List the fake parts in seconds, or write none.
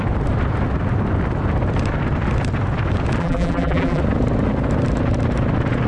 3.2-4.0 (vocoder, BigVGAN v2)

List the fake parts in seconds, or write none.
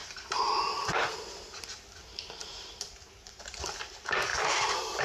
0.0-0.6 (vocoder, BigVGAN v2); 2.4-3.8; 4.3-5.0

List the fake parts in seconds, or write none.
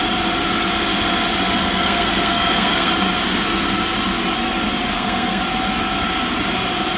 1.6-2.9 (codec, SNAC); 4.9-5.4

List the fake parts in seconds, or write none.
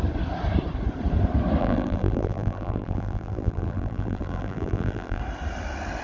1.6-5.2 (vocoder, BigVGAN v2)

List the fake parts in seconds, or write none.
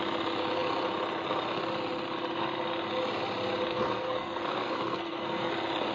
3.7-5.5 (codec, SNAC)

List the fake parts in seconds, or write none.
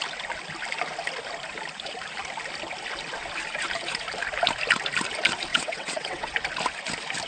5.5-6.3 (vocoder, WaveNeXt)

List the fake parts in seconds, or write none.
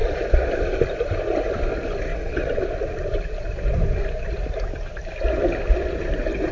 2.1-2.6 (vocoder, WaveNeXt)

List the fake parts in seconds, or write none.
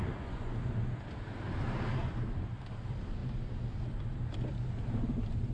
0.0-0.7 (vocoder, Vocos)